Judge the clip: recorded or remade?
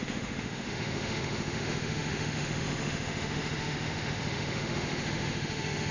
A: remade